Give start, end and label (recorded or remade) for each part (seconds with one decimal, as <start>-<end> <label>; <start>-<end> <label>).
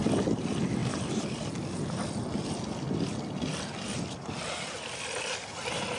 0.0-6.0 recorded